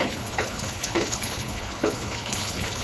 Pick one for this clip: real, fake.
fake